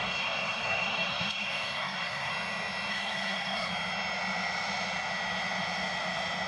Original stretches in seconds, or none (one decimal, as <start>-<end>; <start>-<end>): 2.3-2.9; 3.7-6.5